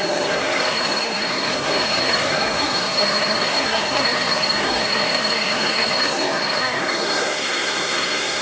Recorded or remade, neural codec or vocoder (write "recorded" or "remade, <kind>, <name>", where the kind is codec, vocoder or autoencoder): remade, codec, SNAC